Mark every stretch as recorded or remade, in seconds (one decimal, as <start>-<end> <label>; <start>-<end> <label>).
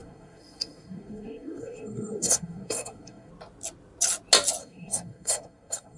0.0-3.3 remade; 3.3-4.6 recorded; 4.6-6.0 remade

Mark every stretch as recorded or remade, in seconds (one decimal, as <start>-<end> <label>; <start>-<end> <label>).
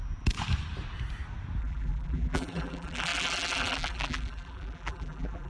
0.0-1.6 recorded; 1.6-5.5 remade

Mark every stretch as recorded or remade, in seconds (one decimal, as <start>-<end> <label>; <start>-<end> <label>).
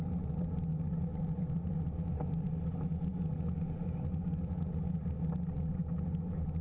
0.0-6.6 recorded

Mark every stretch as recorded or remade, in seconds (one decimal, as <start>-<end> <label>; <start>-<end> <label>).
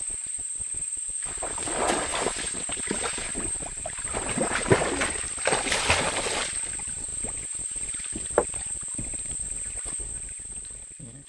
0.0-2.1 recorded; 2.1-4.8 remade; 4.8-7.1 recorded; 7.1-7.9 remade; 7.9-11.3 recorded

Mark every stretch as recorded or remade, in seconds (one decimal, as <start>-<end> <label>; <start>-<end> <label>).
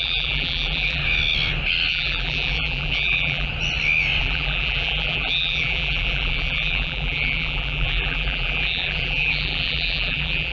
0.0-1.0 remade; 1.0-1.9 recorded; 1.9-3.5 remade; 3.5-4.2 recorded; 4.2-10.5 remade